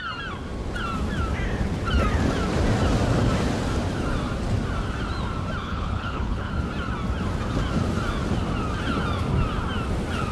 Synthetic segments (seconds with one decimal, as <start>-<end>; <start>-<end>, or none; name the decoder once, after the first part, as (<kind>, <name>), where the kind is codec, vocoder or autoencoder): 5.6-6.5 (codec, HILCodec)